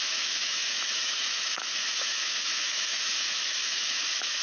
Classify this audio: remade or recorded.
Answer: remade